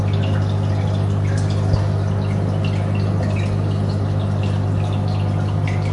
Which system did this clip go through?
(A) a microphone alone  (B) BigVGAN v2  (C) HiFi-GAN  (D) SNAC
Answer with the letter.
A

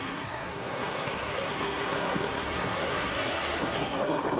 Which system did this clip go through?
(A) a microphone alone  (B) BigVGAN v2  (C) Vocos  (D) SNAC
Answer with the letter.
D